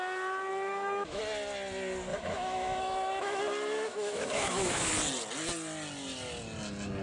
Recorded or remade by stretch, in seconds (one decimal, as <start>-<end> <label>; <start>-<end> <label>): 0.0-0.5 recorded; 0.5-1.2 remade; 1.2-2.1 recorded; 2.1-3.4 remade; 3.4-3.9 recorded; 3.9-4.9 remade; 4.9-7.0 recorded

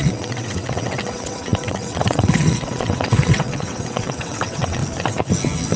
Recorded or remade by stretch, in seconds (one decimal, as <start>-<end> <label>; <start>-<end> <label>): 0.0-4.8 remade; 4.8-5.8 recorded

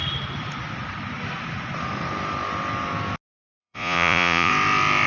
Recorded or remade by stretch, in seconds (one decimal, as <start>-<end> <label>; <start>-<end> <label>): 0.0-3.6 recorded; 3.6-4.5 remade; 4.5-5.1 recorded

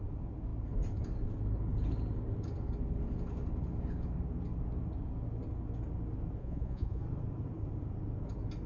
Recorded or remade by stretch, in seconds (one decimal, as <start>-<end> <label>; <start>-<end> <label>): 0.0-6.4 recorded; 6.4-7.0 remade; 7.0-8.7 recorded

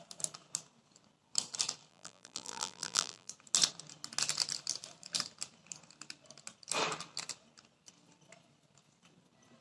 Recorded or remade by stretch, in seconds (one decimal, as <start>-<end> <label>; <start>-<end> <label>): 0.0-1.9 recorded; 1.9-3.3 remade; 3.3-9.6 recorded

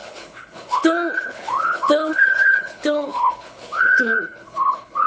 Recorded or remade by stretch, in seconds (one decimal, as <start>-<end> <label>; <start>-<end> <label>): 0.0-5.1 remade

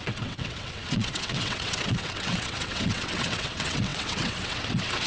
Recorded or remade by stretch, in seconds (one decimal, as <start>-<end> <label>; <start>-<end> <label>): 0.0-5.1 remade

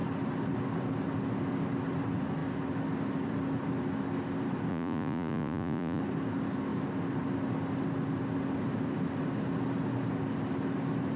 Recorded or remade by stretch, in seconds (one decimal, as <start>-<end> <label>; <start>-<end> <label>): 0.0-4.7 recorded; 4.7-6.0 remade; 6.0-11.2 recorded